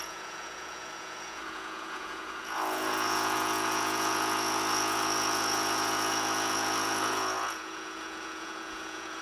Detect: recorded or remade remade